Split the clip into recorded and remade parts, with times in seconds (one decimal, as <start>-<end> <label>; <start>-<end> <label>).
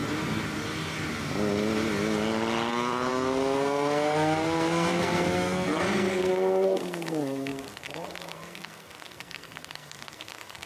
0.0-2.7 recorded; 2.7-10.7 remade